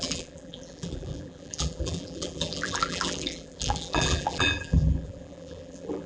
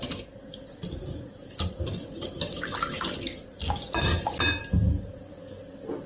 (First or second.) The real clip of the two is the second